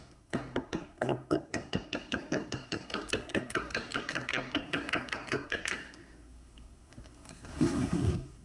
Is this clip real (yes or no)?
no